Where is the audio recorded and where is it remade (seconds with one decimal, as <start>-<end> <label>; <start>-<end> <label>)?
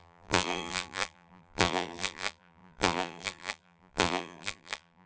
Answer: 0.0-5.1 remade